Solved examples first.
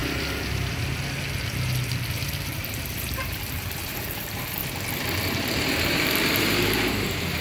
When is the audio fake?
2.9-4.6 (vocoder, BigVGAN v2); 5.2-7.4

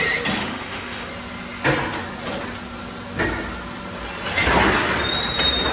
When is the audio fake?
0.4-1.1 (autoencoder, DAC-VAE)